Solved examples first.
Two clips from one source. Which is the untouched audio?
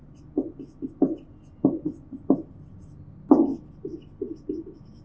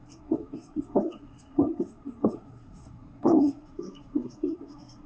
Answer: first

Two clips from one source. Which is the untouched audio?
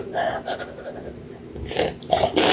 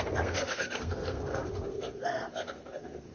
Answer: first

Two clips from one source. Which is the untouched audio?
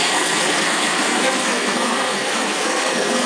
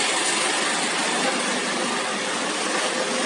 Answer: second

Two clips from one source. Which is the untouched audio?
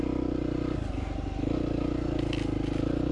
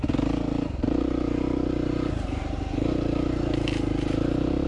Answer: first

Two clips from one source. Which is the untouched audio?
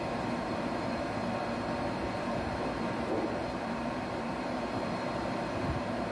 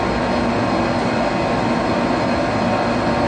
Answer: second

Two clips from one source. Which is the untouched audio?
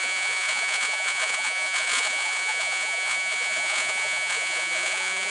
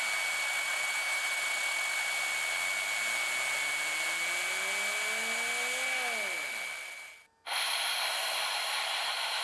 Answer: second